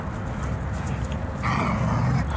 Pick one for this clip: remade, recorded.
recorded